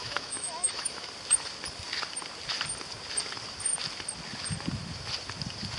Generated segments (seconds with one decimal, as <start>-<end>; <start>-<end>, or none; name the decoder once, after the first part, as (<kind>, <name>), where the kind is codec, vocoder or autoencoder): 0.0-1.1 (autoencoder, DAC-VAE)